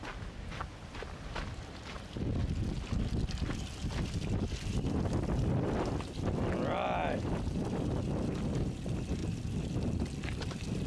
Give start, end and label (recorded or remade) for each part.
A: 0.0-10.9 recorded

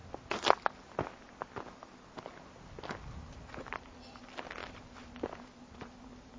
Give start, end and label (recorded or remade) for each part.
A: 0.0-6.4 recorded